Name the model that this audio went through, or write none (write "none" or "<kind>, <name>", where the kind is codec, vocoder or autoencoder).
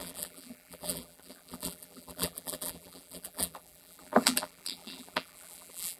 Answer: vocoder, BigVGAN v2